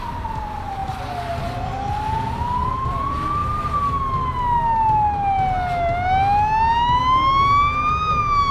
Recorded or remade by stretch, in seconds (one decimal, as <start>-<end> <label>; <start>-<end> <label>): 0.0-8.5 recorded